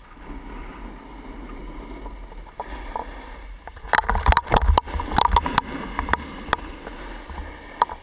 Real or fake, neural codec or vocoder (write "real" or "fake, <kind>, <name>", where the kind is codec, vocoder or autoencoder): real